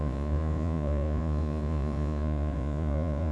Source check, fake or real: fake